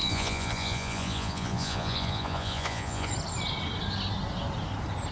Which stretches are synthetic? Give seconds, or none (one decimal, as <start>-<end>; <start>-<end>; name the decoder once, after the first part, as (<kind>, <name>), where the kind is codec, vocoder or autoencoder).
0.0-3.1 (vocoder, Vocos)